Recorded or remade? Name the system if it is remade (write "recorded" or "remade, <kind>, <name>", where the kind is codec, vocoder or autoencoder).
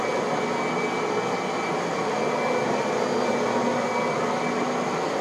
recorded